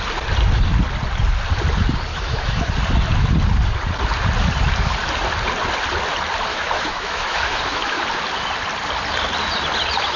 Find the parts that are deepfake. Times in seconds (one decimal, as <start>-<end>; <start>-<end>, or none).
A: 2.1-2.7; 6.5-8.0